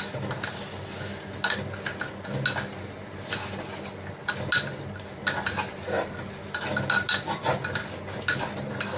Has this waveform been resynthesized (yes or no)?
no